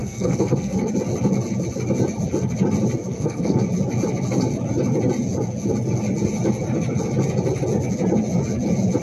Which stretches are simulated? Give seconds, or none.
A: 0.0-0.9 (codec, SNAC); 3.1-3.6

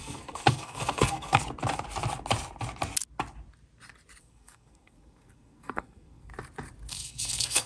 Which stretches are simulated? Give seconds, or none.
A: 0.0-1.4 (codec, SNAC); 4.2-6.3; 6.9-7.7

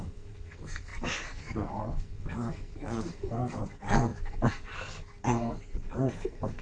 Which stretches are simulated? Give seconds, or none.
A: 0.0-6.6 (codec, SNAC)

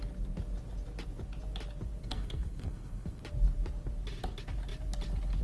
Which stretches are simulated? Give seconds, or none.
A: 2.0-3.2 (codec, SNAC)

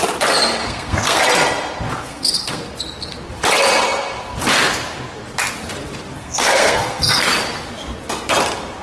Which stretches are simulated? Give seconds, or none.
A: 0.6-1.2 (codec, SNAC); 2.1-2.7; 6.2-7.3